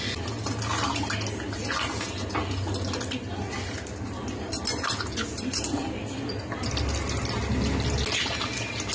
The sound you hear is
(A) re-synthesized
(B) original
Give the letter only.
B